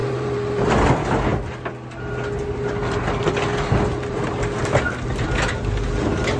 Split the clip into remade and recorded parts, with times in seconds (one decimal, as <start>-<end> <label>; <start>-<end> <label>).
0.0-0.8 remade; 0.8-6.4 recorded